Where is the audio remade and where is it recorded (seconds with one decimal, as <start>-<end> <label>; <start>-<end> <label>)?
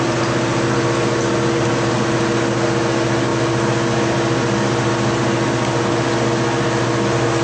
0.0-7.4 recorded